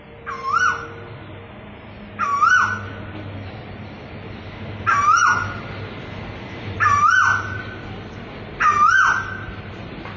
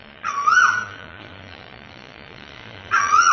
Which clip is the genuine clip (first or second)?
first